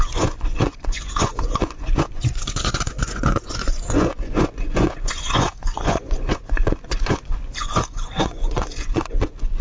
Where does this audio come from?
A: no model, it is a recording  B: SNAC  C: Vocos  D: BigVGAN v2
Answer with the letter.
C